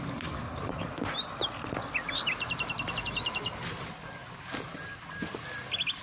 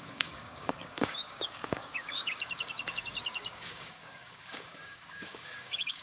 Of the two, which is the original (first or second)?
first